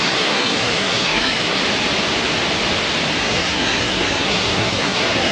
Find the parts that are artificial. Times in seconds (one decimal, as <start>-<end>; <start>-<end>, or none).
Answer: 0.0-1.6; 3.2-5.3